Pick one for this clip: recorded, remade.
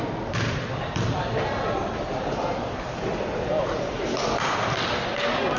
recorded